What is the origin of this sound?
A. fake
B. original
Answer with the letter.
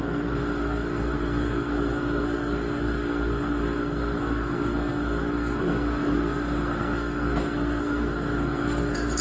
A